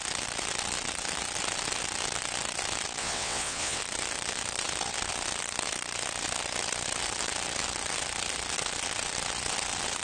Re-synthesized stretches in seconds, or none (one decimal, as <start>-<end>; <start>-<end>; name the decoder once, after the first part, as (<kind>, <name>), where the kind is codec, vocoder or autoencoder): 3.0-3.8 (vocoder, WaveNeXt)